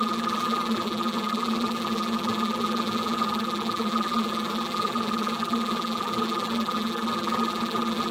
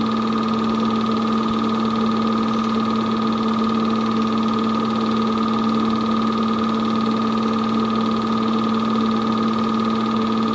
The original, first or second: second